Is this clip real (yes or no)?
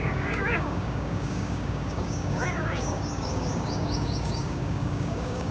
no